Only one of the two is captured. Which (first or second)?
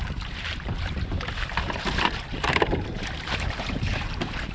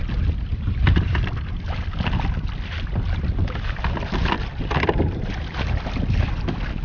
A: second